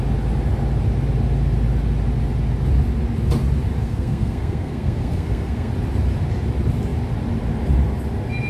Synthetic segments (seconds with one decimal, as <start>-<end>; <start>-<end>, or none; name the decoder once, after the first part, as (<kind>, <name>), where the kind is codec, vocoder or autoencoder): 3.8-5.7 (codec, SNAC)